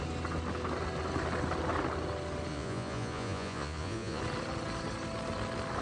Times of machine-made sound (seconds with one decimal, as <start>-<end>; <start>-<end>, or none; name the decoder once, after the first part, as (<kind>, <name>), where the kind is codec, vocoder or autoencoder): 2.5-4.2 (vocoder, Vocos)